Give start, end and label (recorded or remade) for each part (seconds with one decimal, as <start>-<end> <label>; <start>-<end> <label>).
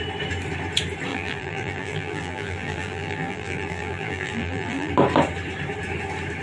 0.0-1.1 recorded; 1.1-4.9 remade; 4.9-6.4 recorded